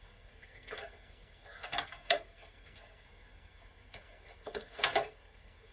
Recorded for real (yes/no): no